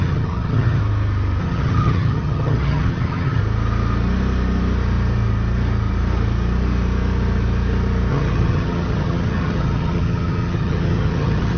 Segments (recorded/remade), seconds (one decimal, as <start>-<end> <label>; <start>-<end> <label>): 0.0-0.8 remade; 0.8-1.4 recorded; 1.4-3.4 remade; 3.4-8.1 recorded; 8.1-11.6 remade